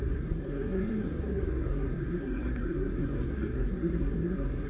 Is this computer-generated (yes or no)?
yes